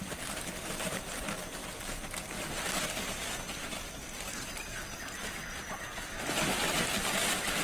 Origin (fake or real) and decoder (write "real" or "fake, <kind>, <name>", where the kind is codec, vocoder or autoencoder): real